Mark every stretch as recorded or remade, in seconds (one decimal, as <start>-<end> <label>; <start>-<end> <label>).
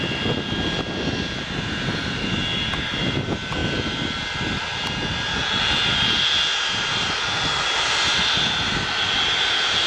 0.0-9.9 recorded